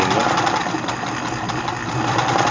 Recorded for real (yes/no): yes